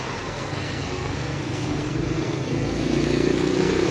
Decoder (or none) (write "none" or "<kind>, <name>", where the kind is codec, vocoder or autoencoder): codec, SNAC